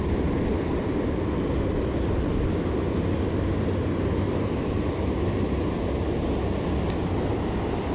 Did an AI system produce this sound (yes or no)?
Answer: no